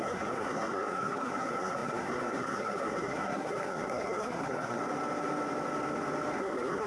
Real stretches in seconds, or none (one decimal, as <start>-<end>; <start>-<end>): 4.8-6.3